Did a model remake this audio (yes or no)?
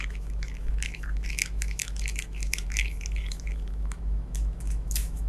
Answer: yes